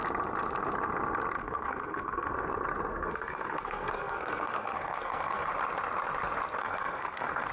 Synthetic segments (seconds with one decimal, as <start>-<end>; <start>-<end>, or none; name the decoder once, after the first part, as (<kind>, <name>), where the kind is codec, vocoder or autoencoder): 1.4-2.3 (codec, SNAC); 2.9-5.5; 6.6-7.5

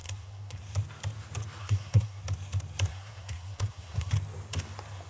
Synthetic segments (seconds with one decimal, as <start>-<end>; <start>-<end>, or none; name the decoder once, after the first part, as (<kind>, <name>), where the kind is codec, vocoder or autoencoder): 0.0-0.6 (codec, SNAC); 1.6-2.2; 2.9-4.1

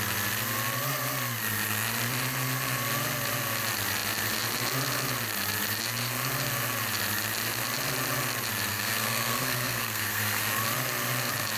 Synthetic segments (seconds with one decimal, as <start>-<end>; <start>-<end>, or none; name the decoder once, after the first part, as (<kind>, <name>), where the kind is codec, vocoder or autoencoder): 8.7-10.4 (codec, SNAC)

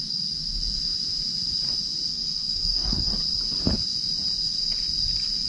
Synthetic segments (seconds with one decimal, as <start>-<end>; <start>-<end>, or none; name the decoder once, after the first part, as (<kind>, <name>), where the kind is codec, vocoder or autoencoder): 2.1-3.1 (codec, SNAC)

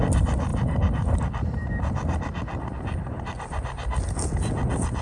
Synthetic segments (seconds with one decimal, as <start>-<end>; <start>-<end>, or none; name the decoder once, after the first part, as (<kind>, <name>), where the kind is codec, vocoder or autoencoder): none

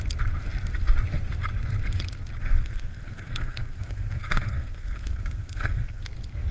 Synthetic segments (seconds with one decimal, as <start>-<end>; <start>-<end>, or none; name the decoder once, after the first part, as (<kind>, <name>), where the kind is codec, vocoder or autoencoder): 2.4-6.0 (codec, SNAC)

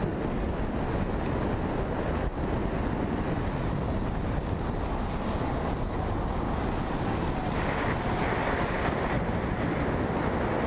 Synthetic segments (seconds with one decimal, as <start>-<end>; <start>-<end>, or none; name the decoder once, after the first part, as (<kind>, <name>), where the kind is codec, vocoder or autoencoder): none